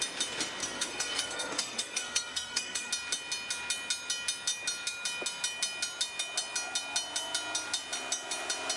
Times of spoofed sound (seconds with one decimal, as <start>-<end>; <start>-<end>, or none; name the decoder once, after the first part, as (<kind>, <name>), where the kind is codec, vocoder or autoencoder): 0.6-2.9 (codec, SNAC)